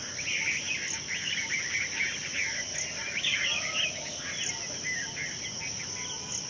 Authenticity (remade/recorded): recorded